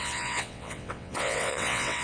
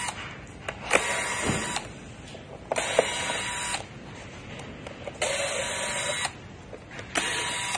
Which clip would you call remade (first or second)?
first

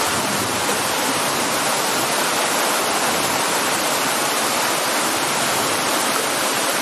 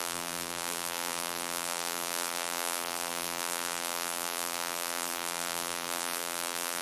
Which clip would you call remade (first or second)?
second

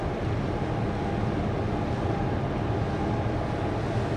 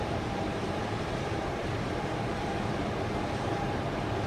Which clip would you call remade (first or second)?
second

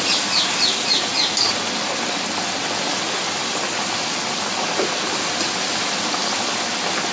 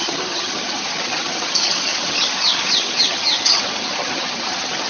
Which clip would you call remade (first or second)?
second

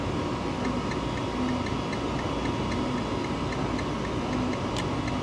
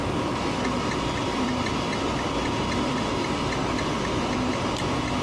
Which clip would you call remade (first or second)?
second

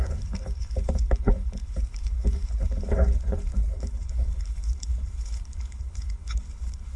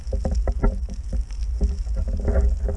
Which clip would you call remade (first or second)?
first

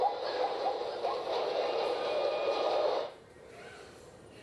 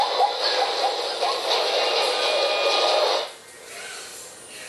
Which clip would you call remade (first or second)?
first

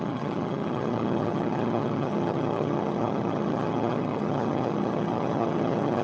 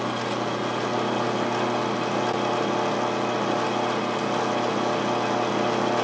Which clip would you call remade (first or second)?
first